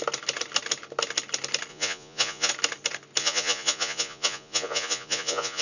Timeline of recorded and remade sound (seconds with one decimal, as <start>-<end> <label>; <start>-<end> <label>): 0.0-1.7 recorded; 1.7-2.5 remade; 2.5-3.2 recorded; 3.2-5.6 remade